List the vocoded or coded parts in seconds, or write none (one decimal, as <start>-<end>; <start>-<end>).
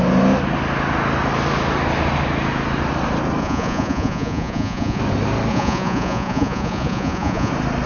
3.4-5.0; 5.5-7.5